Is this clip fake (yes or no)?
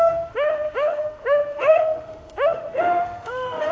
yes